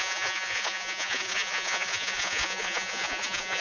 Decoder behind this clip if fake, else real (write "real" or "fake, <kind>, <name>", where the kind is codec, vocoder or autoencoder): fake, vocoder, Vocos